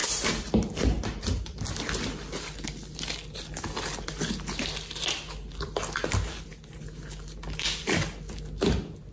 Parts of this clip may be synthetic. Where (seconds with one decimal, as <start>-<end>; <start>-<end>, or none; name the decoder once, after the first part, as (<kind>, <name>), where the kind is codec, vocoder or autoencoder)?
0.0-1.6 (vocoder, BigVGAN v2)